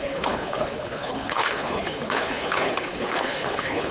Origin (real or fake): fake